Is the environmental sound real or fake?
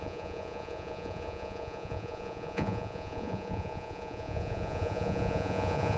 fake